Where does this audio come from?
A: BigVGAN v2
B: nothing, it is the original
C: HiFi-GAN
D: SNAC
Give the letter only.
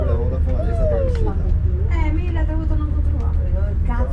B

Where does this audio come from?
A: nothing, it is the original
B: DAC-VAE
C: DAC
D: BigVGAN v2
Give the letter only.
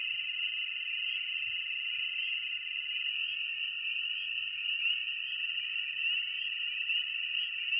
A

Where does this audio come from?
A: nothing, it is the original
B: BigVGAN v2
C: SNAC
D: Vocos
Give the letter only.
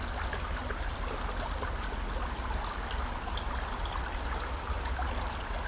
A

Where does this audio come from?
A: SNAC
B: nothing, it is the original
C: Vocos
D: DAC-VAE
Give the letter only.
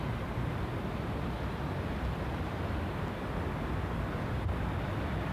B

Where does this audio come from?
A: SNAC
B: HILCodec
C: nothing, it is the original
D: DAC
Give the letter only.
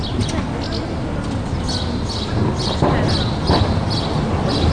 C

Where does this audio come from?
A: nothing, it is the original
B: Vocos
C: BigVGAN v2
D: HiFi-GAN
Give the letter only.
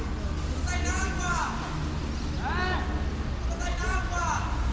A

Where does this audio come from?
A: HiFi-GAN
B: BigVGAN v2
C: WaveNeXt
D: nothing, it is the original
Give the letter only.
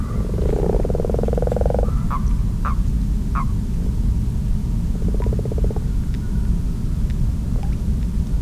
D